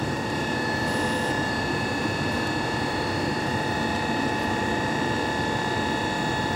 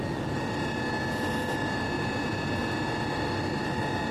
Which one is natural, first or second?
second